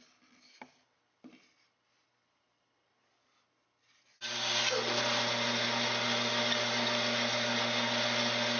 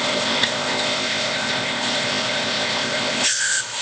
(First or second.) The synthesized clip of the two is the second